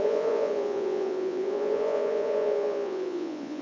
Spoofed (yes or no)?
yes